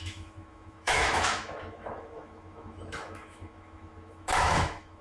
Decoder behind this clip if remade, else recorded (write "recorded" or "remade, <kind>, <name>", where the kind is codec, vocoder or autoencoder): remade, autoencoder, DAC-VAE